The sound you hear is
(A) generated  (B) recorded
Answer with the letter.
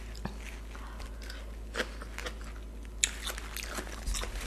B